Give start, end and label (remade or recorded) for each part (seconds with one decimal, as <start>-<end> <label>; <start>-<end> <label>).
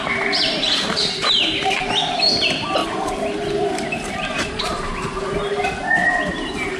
0.0-2.8 remade; 2.8-3.6 recorded; 3.6-4.9 remade; 4.9-6.3 recorded; 6.3-6.8 remade